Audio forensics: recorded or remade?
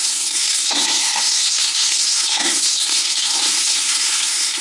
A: remade